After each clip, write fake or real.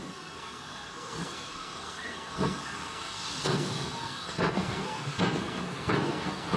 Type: fake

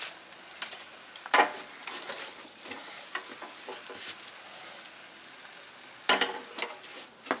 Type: real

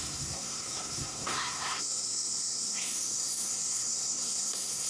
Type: fake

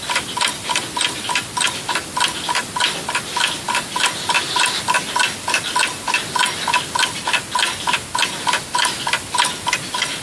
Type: real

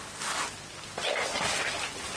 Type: real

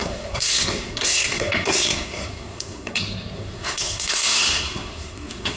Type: fake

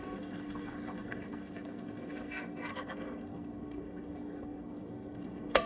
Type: fake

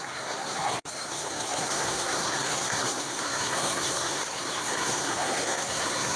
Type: fake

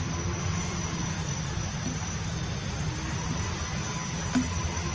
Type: real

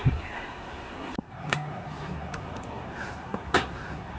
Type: fake